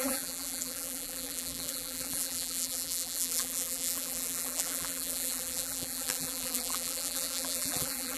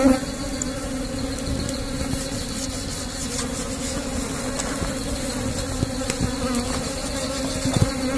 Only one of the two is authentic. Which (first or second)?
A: second